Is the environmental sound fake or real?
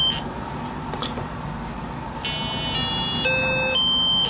real